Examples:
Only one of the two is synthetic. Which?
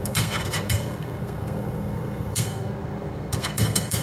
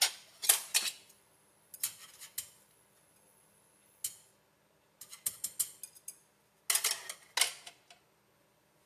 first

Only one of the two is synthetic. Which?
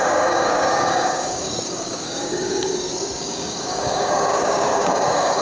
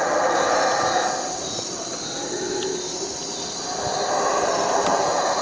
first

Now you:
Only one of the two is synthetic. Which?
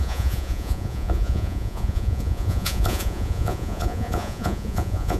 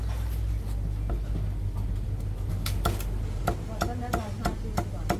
first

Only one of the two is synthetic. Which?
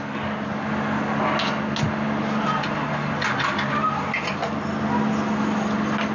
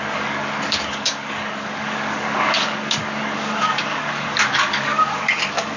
second